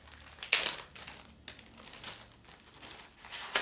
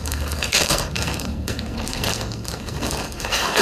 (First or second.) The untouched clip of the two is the first